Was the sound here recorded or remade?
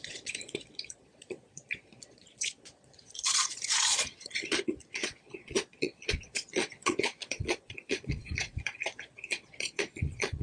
remade